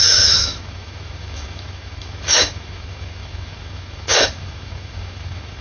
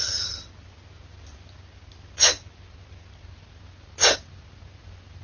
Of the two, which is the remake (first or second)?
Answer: first